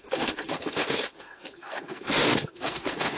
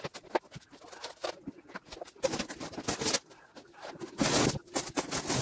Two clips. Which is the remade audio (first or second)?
first